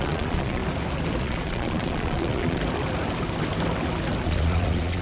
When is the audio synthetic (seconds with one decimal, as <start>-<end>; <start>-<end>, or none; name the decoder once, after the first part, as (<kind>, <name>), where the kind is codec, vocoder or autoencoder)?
0.0-0.6 (vocoder, Vocos); 1.2-2.6; 4.2-5.0